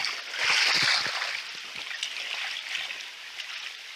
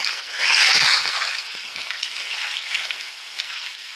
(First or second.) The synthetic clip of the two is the second